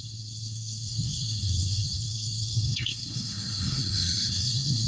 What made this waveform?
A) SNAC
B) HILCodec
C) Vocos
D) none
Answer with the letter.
A